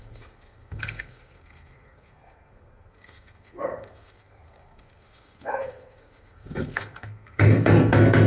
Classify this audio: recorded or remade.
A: remade